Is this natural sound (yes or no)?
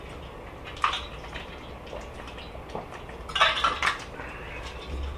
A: yes